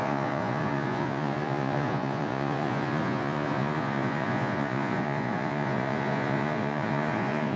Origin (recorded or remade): remade